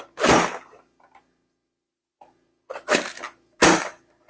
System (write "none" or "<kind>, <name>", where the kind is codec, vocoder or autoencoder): none